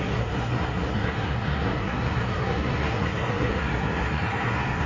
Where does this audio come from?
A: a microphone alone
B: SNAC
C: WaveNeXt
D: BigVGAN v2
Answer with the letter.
B